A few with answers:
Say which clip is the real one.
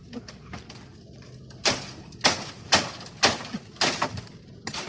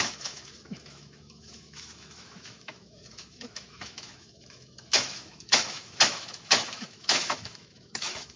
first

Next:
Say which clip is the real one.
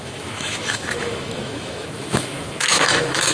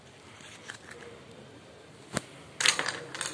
second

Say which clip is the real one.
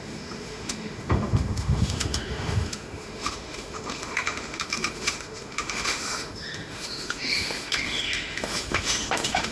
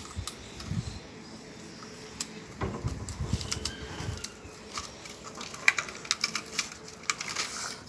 second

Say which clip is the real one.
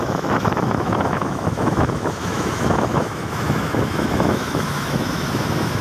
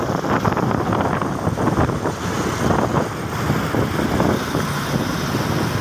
second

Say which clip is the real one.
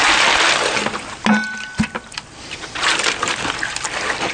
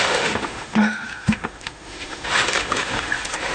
first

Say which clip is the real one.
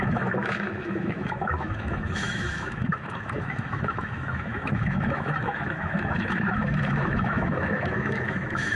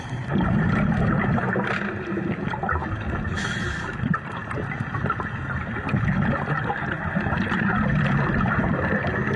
second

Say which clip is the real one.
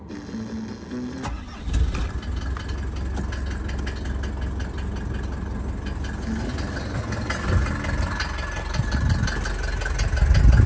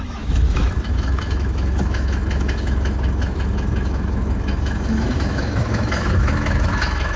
first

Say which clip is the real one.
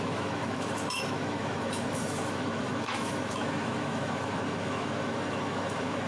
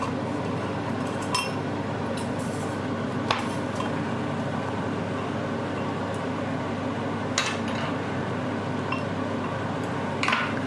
second